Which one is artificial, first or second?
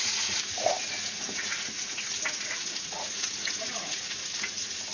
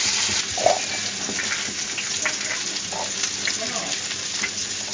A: first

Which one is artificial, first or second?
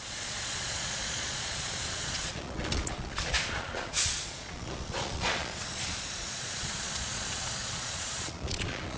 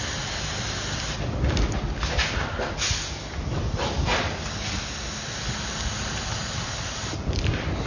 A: first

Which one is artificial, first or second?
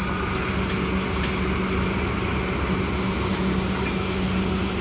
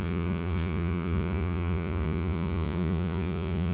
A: second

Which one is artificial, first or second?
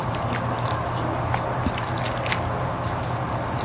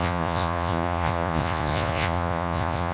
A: second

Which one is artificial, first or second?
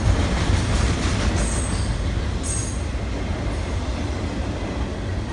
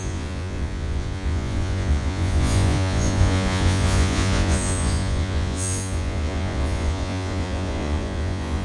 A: second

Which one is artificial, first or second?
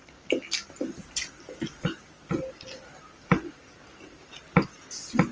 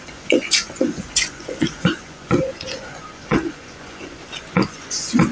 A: second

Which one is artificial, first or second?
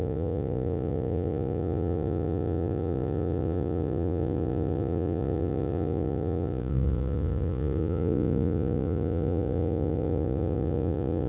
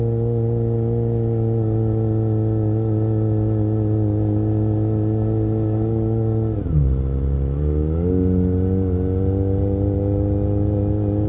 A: first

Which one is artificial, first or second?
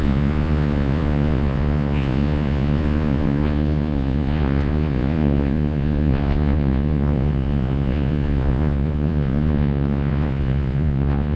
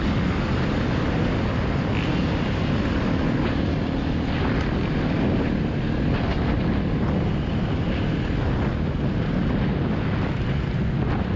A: first